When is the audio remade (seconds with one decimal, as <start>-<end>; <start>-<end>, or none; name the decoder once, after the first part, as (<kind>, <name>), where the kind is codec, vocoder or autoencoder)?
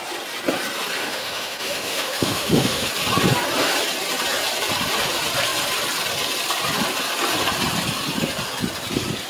1.0-2.9 (autoencoder, DAC-VAE)